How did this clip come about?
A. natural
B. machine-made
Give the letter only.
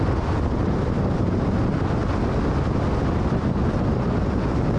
A